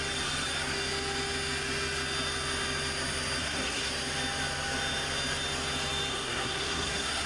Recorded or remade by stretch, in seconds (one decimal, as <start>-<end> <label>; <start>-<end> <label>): 0.0-3.4 recorded; 3.4-3.9 remade; 3.9-6.1 recorded; 6.1-7.3 remade